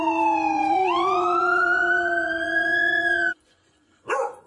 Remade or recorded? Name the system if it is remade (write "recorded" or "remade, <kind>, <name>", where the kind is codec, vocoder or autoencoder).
remade, vocoder, Vocos